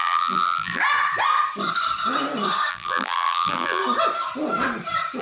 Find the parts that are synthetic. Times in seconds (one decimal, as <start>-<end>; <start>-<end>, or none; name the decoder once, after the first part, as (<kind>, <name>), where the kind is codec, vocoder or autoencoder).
0.0-0.8 (vocoder, BigVGAN v2); 2.7-3.8